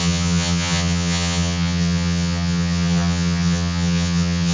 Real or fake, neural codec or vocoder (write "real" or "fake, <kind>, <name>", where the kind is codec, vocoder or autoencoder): fake, vocoder, HiFi-GAN